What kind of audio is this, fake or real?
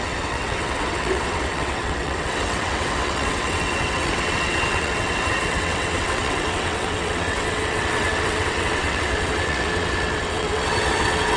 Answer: fake